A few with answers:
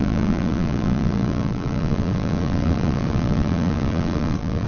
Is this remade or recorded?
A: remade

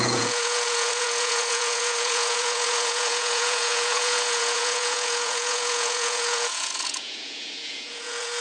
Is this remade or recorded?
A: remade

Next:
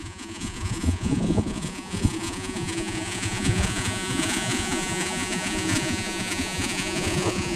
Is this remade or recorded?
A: remade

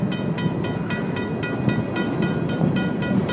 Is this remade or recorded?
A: recorded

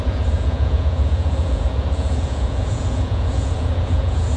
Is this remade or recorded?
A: remade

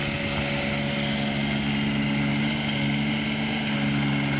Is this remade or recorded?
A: recorded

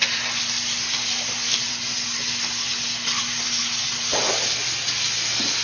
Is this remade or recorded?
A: recorded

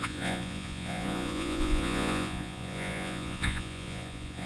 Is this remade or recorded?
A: remade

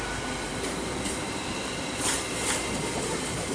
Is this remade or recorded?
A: recorded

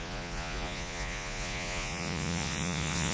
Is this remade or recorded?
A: remade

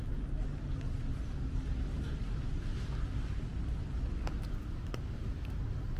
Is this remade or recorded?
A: recorded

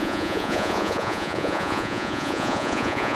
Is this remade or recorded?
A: remade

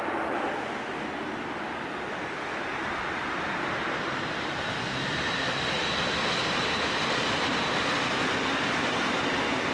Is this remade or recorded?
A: recorded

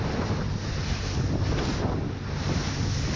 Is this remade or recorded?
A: recorded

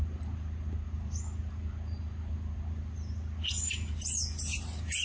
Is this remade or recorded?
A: recorded